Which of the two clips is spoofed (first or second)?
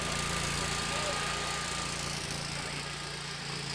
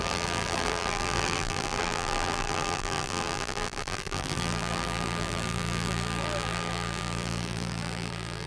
second